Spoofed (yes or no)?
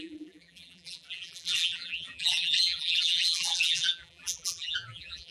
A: yes